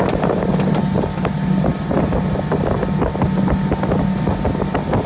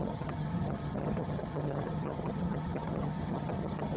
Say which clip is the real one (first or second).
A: first